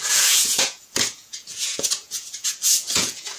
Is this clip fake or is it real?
fake